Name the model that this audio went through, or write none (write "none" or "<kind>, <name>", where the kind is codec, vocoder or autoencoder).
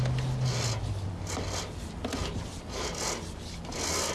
none